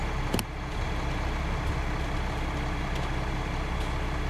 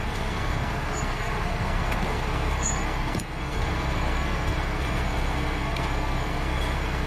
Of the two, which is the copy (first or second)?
second